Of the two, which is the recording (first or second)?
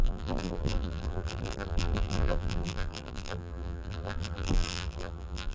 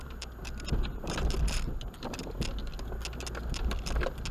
second